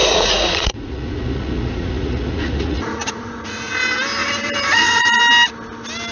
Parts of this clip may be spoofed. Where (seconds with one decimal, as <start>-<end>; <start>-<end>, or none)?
0.0-3.7; 4.2-5.2